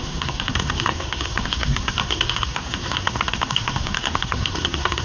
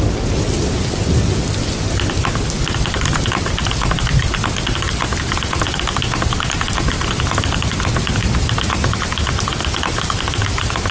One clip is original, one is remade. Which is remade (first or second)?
first